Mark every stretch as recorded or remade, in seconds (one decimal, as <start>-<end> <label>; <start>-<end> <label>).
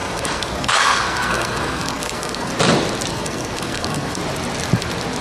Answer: 0.0-2.5 remade; 2.5-3.1 recorded; 3.1-4.2 remade; 4.2-5.2 recorded